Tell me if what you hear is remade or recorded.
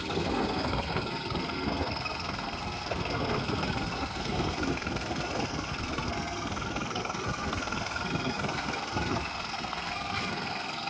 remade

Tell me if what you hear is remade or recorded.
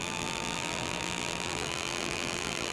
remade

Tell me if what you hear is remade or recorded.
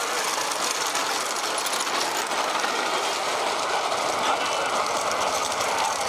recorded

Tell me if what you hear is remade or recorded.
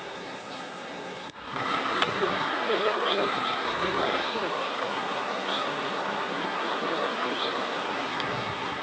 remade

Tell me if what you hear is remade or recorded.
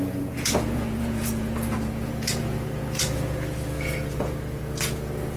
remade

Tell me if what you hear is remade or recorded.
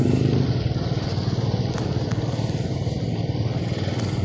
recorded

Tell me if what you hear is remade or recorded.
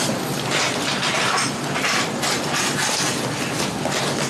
recorded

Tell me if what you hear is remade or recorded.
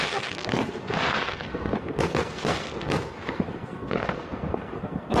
remade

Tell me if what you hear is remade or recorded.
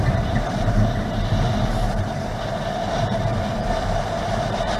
remade